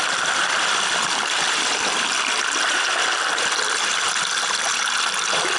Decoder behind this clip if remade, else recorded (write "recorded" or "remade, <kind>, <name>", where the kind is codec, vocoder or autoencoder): remade, vocoder, BigVGAN v2